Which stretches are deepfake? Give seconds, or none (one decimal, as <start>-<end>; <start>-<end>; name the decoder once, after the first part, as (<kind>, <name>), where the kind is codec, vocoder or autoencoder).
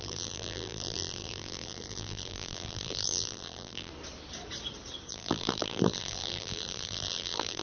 0.0-3.9 (vocoder, BigVGAN v2); 5.1-7.6